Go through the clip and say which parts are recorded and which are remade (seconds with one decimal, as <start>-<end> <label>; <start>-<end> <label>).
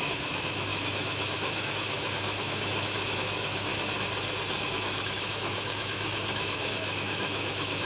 0.0-3.7 remade; 3.7-4.7 recorded; 4.7-7.9 remade